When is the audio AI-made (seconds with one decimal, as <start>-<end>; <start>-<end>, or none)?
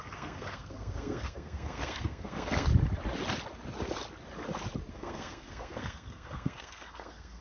0.0-2.7; 4.9-7.4